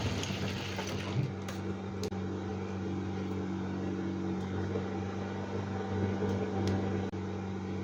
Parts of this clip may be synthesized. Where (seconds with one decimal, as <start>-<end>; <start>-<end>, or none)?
none

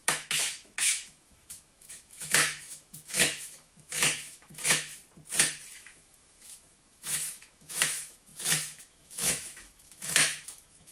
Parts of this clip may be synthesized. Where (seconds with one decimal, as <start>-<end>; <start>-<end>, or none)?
0.0-5.0; 5.7-10.9

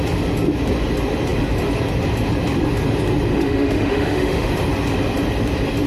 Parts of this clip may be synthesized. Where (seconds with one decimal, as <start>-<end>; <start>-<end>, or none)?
3.3-4.5